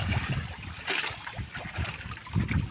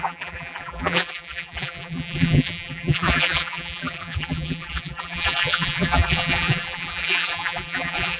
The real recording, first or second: first